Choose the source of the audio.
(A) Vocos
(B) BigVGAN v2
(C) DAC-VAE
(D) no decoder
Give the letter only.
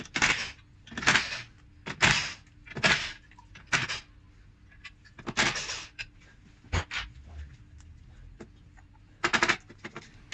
D